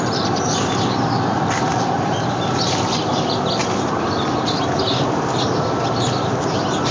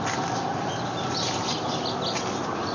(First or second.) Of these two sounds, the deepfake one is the first